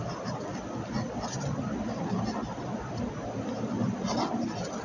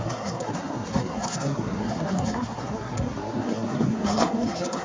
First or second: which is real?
first